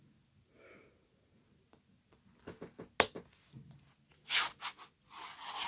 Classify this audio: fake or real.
real